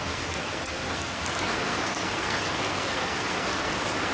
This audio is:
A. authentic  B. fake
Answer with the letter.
B